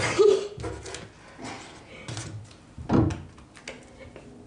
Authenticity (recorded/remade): recorded